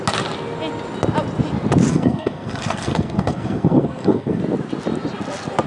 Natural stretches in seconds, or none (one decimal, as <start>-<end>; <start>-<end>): 0.0-1.9; 4.4-5.7